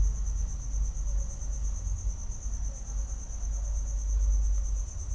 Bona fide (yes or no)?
yes